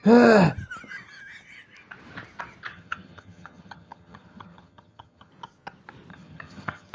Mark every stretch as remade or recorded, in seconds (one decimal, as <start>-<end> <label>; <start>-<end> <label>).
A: 0.0-2.7 recorded; 2.7-5.3 remade; 5.3-6.1 recorded; 6.1-6.9 remade